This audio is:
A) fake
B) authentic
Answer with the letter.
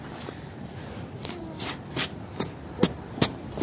B